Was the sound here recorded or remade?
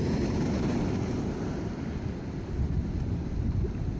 recorded